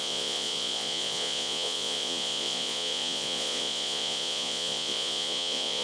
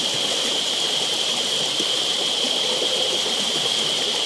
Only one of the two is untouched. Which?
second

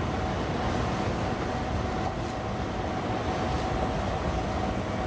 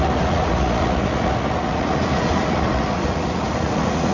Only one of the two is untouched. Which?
first